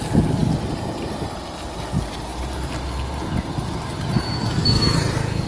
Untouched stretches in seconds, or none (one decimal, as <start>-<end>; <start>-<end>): 0.0-2.3; 2.9-5.5